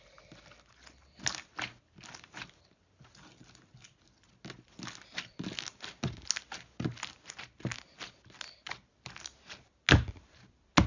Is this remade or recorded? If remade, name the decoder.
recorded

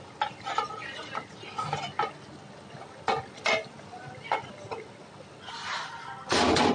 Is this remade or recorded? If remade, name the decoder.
recorded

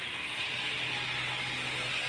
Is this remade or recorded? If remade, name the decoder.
recorded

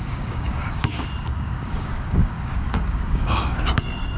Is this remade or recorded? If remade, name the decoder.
remade, codec, DAC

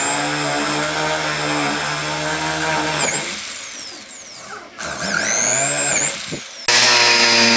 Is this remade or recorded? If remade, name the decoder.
recorded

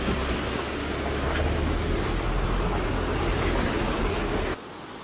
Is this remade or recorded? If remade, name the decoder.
recorded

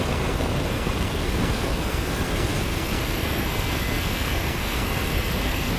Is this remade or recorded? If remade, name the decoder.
remade, codec, SNAC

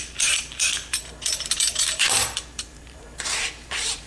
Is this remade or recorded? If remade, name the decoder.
remade, vocoder, BigVGAN v2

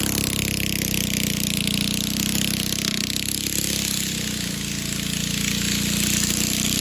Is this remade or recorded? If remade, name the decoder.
recorded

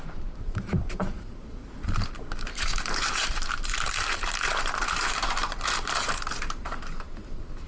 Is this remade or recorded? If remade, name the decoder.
remade, vocoder, BigVGAN v2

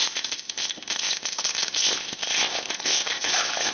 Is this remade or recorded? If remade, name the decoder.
remade, codec, ZipCodec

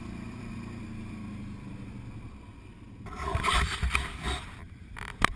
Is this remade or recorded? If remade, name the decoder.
remade, vocoder, BigVGAN v2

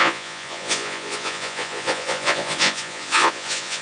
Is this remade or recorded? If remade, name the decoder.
remade, vocoder, Vocos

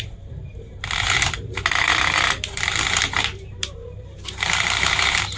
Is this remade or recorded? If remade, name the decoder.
remade, vocoder, BigVGAN v2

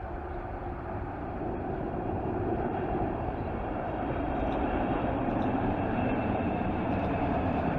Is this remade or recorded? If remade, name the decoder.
remade, vocoder, BigVGAN v2